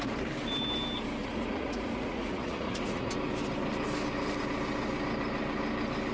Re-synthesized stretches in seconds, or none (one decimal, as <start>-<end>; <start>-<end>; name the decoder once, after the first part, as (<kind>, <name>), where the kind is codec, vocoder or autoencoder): 1.2-3.1 (vocoder, Vocos)